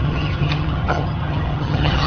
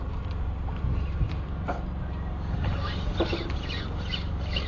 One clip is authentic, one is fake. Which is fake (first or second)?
first